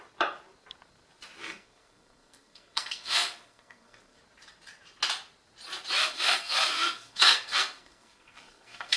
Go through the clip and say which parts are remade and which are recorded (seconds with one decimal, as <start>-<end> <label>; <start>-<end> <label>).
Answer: 0.0-1.4 recorded; 1.4-4.2 remade; 4.2-6.0 recorded; 6.0-9.0 remade